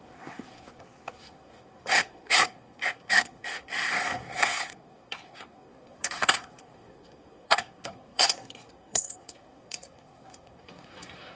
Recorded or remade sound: remade